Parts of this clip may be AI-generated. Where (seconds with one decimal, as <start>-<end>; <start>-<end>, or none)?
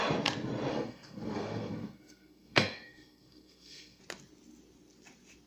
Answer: 0.7-4.0